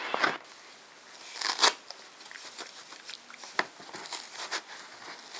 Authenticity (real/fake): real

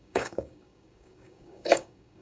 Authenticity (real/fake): fake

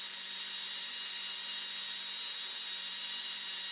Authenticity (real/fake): real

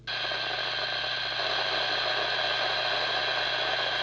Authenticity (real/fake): real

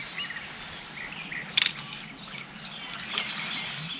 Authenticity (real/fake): real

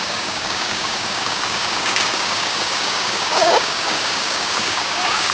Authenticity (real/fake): fake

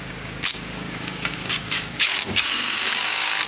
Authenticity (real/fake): fake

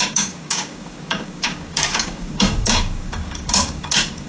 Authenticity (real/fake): fake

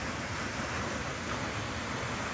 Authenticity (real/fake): real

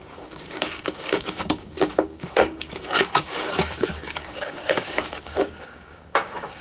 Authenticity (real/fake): fake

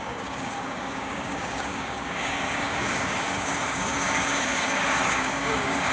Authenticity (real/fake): fake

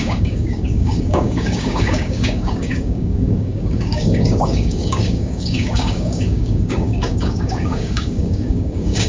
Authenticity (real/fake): fake